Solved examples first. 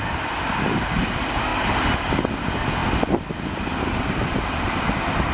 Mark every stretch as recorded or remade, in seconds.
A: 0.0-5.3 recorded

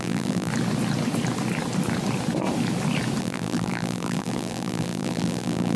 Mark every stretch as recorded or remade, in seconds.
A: 0.0-0.5 remade; 0.5-3.2 recorded; 3.2-5.8 remade

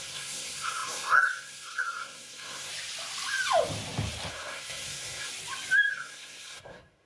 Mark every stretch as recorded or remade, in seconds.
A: 0.0-2.7 remade; 2.7-4.3 recorded; 4.3-5.3 remade; 5.3-5.9 recorded; 5.9-7.1 remade